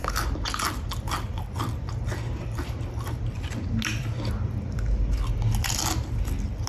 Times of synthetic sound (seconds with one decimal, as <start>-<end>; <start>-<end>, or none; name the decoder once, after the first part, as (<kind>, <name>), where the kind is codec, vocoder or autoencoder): none